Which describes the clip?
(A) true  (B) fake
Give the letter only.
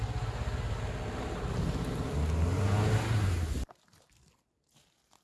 A